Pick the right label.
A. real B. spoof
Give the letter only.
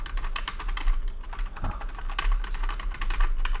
A